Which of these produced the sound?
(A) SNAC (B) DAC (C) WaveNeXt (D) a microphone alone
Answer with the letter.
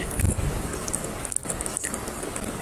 B